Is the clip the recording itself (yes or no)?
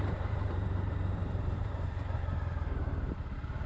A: no